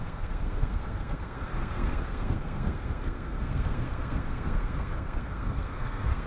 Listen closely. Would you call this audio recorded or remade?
remade